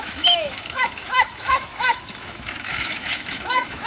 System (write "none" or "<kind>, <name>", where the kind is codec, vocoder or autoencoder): autoencoder, DAC-VAE